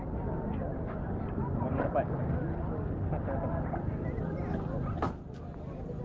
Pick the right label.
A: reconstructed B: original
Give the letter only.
B